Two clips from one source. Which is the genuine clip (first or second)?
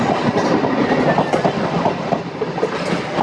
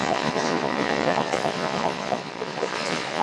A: first